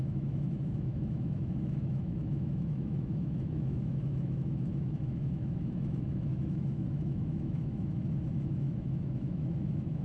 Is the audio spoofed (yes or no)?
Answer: yes